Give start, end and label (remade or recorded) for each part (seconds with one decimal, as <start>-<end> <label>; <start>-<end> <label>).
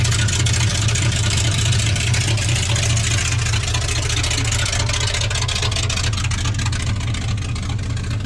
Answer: 0.0-0.7 recorded; 0.7-2.7 remade; 2.7-8.3 recorded